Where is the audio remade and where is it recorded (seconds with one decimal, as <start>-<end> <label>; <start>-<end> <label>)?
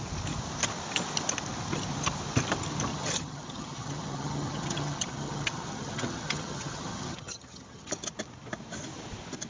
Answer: 0.0-2.9 recorded; 2.9-7.9 remade; 7.9-9.5 recorded